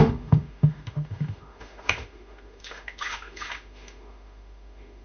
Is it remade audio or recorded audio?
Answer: remade